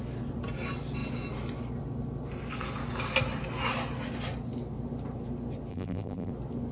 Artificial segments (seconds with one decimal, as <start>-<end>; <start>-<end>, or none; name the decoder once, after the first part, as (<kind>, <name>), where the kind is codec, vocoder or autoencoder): 5.7-6.3 (vocoder, BigVGAN v2)